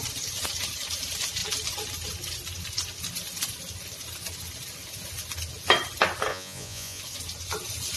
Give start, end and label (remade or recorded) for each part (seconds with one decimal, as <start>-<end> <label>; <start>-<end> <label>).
0.0-6.3 recorded; 6.3-7.0 remade; 7.0-8.0 recorded